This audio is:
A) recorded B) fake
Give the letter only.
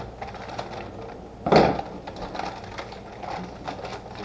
A